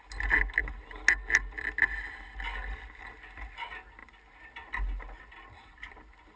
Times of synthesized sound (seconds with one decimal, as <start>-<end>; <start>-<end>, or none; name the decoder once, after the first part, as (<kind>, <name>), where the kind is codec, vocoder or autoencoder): none